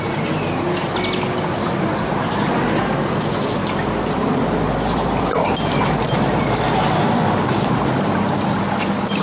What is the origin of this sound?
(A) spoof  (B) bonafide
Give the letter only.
B